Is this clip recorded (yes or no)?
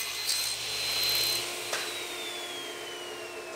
yes